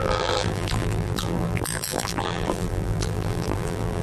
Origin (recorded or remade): remade